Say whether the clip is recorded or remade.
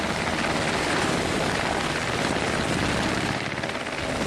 recorded